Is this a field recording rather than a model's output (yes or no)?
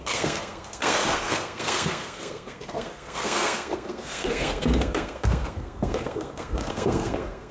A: no